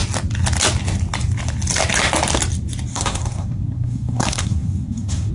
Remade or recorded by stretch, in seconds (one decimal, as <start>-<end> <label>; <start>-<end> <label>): 0.0-2.9 recorded; 2.9-5.3 remade